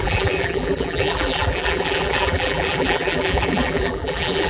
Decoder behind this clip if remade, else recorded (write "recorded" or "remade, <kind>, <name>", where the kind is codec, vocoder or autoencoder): remade, vocoder, BigVGAN v2